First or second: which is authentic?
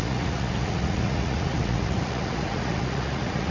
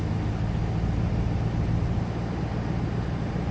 second